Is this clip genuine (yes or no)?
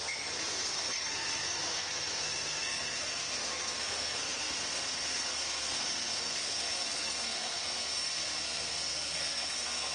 no